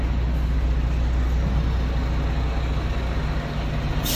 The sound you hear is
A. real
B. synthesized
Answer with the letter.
A